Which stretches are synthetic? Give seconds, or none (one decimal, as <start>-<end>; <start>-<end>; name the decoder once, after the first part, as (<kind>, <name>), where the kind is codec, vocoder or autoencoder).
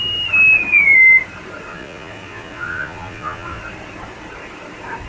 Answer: 1.7-3.6 (vocoder, Vocos)